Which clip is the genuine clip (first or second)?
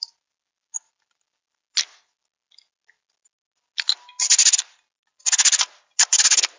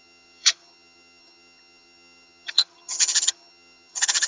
first